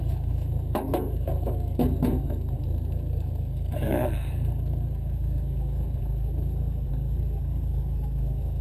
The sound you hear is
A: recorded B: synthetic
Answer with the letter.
B